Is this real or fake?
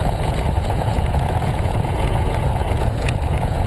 fake